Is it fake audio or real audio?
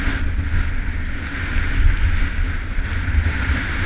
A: real